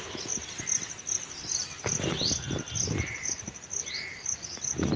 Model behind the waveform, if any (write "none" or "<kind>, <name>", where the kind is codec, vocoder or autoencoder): none